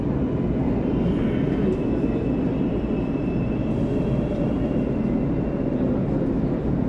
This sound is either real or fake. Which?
real